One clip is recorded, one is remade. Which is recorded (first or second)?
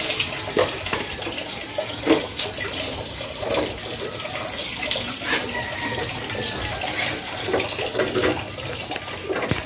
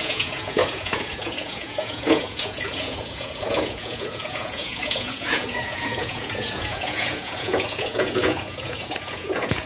first